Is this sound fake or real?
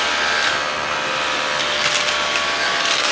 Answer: real